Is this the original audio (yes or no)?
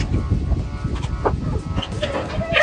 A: yes